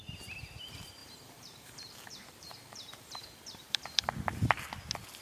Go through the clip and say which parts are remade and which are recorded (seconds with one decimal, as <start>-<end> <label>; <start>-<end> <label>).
0.0-1.0 recorded; 1.0-4.1 remade; 4.1-5.2 recorded